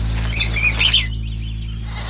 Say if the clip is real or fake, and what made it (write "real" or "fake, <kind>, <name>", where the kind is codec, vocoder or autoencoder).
real